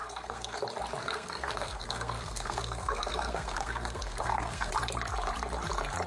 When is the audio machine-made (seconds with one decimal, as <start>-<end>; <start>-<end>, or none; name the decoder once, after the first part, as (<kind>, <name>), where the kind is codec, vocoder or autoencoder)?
0.0-0.6 (codec, SNAC); 1.0-4.7